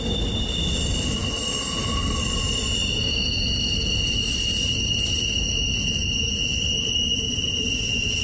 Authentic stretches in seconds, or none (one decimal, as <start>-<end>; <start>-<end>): 0.0-8.2

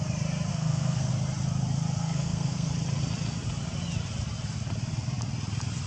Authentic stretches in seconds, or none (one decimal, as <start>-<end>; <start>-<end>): 0.0-0.5; 1.1-2.0; 2.7-5.9

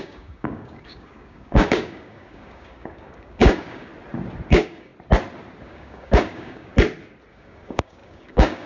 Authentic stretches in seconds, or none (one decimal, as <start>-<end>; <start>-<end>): 3.9-4.5; 4.9-5.6; 6.7-7.3